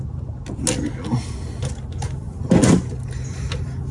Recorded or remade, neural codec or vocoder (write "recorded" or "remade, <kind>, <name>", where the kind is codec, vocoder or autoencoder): recorded